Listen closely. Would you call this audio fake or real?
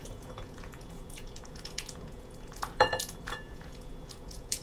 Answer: fake